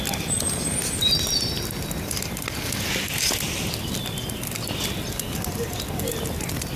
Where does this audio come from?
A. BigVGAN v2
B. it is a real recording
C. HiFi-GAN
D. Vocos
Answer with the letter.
B